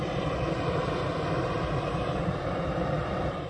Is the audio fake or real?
fake